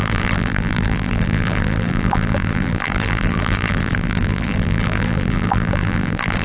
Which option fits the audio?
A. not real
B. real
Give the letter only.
A